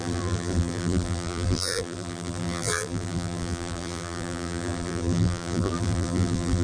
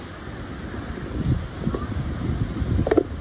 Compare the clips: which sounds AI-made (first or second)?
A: first